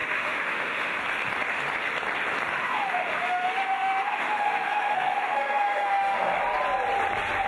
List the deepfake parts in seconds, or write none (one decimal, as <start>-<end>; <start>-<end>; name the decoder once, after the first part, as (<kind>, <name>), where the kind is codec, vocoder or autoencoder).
0.0-1.0 (autoencoder, DAC-VAE); 2.6-6.4